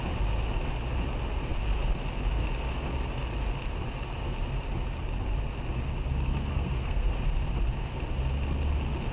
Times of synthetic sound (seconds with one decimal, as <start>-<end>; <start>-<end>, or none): 6.5-7.1